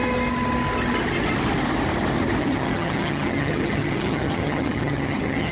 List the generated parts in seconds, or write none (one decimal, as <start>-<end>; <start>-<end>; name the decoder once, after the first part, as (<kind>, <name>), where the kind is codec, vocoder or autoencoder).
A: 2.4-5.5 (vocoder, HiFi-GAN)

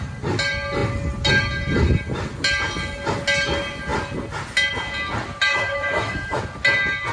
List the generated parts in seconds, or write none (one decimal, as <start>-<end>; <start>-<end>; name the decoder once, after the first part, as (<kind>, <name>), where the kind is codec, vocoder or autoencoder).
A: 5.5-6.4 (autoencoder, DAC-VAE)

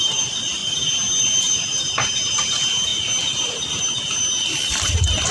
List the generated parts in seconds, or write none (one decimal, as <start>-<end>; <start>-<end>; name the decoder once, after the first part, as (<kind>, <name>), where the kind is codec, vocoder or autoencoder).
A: 0.0-0.6 (vocoder, BigVGAN v2); 1.2-2.9; 3.8-4.2; 4.7-5.3

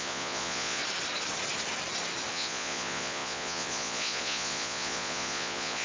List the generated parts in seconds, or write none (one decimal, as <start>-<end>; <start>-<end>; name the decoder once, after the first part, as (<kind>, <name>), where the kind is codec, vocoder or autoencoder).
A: 0.0-0.8 (vocoder, Vocos); 2.3-5.8